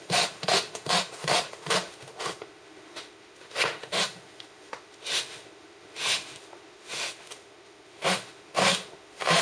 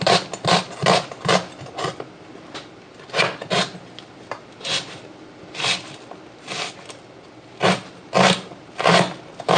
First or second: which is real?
second